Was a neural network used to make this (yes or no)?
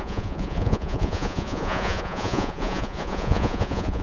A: yes